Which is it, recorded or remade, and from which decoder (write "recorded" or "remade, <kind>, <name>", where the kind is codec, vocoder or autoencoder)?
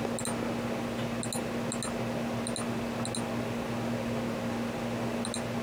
recorded